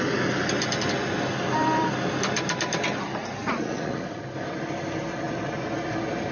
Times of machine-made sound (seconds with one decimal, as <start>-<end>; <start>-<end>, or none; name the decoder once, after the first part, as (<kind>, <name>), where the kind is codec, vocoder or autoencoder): 3.4-4.2 (vocoder, Vocos)